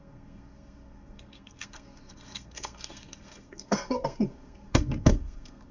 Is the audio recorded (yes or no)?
no